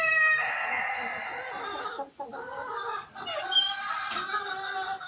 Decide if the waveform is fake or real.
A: real